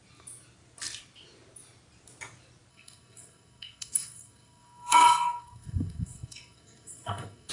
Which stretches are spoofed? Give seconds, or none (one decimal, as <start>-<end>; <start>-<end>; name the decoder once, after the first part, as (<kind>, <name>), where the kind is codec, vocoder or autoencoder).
2.7-7.5 (codec, SNAC)